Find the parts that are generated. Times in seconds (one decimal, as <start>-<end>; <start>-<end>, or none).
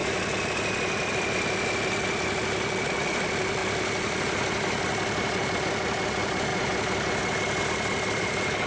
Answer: none